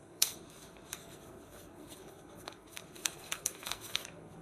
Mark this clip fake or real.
fake